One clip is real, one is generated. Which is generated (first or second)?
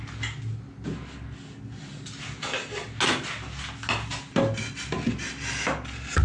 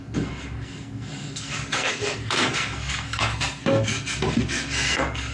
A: second